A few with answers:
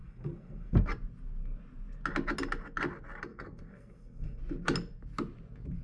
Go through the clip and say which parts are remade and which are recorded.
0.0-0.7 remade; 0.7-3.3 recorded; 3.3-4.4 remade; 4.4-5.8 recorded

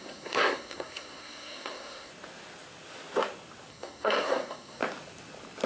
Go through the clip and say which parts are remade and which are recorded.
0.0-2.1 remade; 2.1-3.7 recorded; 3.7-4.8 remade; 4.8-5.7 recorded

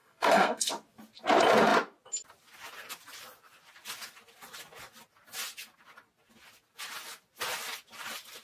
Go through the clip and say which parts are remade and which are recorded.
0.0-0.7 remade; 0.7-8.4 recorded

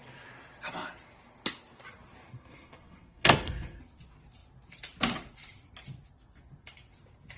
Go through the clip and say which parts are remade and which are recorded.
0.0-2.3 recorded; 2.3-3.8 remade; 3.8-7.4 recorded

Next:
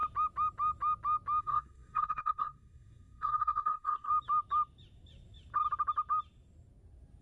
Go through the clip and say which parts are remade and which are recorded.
0.0-1.4 recorded; 1.4-4.1 remade; 4.1-7.2 recorded

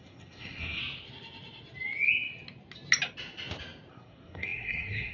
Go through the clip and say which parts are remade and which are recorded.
0.0-0.8 remade; 0.8-3.9 recorded; 3.9-5.1 remade

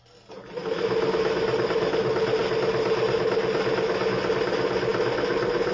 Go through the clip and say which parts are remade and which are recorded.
0.0-5.7 recorded

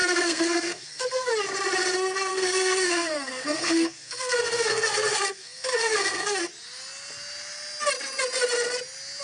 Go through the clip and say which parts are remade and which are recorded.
0.0-1.3 remade; 1.3-2.3 recorded; 2.3-6.4 remade; 6.4-9.2 recorded